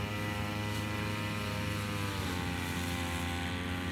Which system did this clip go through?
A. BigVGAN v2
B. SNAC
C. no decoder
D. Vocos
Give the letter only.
C